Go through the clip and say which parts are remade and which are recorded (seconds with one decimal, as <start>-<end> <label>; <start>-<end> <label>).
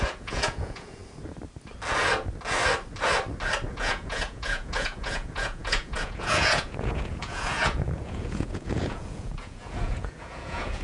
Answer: 0.0-1.0 remade; 1.0-3.7 recorded; 3.7-10.8 remade